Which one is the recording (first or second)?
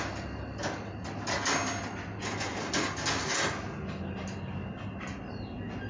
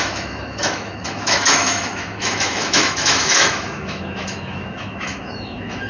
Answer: first